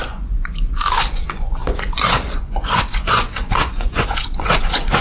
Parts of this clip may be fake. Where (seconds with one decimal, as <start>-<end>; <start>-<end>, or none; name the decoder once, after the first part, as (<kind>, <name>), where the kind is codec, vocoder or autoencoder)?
0.0-5.0 (vocoder, Vocos)